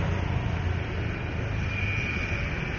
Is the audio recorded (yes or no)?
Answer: yes